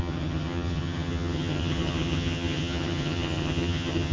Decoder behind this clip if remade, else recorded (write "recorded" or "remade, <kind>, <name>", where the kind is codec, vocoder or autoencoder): remade, vocoder, HiFi-GAN